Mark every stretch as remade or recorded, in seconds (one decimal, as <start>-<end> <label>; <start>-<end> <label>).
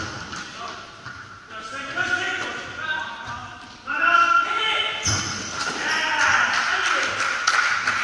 0.0-3.4 recorded; 3.4-6.1 remade; 6.1-8.0 recorded